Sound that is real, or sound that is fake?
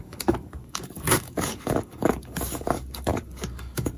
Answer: fake